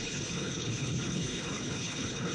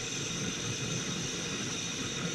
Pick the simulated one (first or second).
first